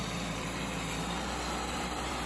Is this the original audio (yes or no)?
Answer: no